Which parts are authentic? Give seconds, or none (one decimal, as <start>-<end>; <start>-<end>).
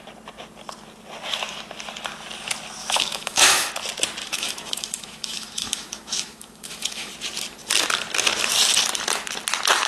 0.0-2.8; 3.7-4.2; 7.1-9.9